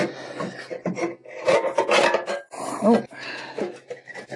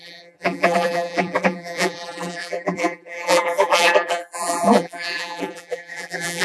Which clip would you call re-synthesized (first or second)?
second